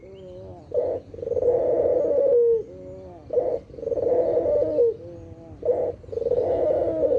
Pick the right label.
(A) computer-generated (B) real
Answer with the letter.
B